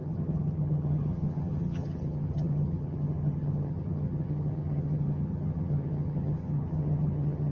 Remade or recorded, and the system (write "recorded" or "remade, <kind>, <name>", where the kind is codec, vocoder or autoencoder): remade, vocoder, HiFi-GAN